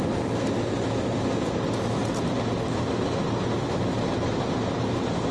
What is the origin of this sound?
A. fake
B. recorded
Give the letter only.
B